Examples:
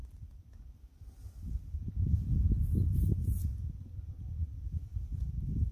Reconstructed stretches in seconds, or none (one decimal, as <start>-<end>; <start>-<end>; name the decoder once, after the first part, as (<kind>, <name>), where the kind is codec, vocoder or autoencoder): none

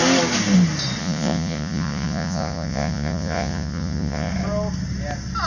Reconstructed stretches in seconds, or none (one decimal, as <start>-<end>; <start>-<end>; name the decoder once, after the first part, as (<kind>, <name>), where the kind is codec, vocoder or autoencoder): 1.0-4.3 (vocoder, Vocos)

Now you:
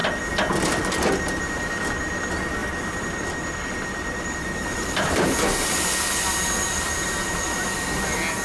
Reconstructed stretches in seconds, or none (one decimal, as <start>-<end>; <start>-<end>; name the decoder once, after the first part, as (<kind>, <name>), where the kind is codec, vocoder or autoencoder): 2.6-5.1 (vocoder, BigVGAN v2)